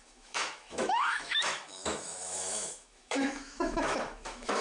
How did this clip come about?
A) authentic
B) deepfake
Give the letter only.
B